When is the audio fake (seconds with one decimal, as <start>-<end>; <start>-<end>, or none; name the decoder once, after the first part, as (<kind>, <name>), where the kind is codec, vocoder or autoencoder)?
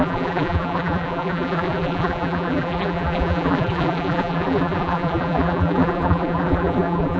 0.0-7.2 (vocoder, BigVGAN v2)